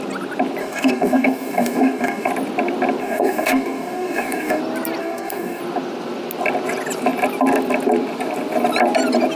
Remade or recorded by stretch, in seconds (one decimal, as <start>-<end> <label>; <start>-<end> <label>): 0.0-0.6 recorded; 0.6-2.3 remade; 2.3-3.0 recorded; 3.0-4.6 remade; 4.6-5.0 recorded; 5.0-5.6 remade; 5.6-9.4 recorded